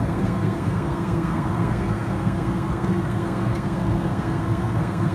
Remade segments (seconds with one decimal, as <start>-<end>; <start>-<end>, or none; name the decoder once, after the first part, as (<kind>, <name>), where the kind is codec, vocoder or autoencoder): 0.0-5.1 (codec, SNAC)